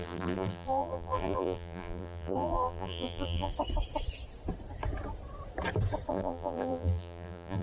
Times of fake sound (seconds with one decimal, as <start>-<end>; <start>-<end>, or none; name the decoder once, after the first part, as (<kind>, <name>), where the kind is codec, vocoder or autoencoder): 0.0-3.5 (vocoder, BigVGAN v2); 6.1-7.6